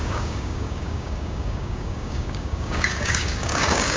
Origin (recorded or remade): remade